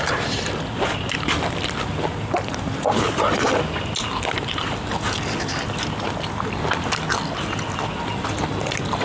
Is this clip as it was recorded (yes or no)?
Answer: yes